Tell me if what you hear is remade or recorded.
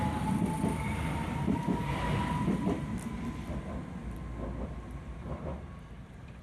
recorded